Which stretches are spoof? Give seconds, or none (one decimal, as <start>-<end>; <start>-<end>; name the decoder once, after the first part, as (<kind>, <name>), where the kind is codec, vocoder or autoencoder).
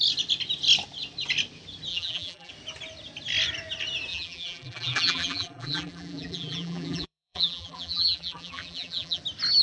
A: 1.9-2.5 (vocoder, BigVGAN v2); 4.1-9.2